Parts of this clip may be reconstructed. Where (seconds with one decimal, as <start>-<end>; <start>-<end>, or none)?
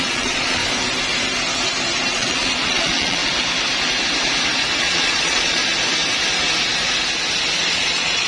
0.0-0.6; 2.1-3.2; 4.8-5.6; 7.7-8.3